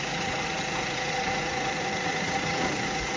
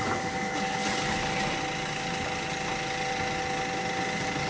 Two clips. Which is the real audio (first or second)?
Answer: second